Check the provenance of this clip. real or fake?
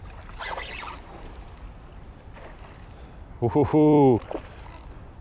fake